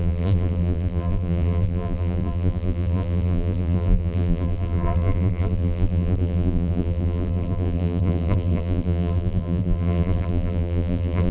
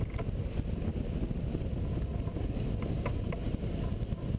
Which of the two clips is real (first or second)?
second